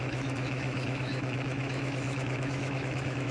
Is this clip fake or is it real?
fake